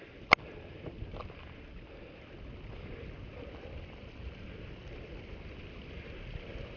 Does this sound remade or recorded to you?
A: recorded